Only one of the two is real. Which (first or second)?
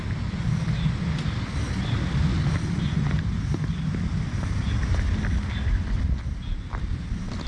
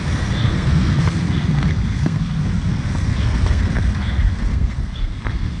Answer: first